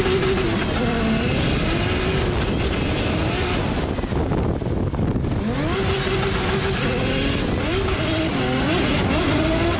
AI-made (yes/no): no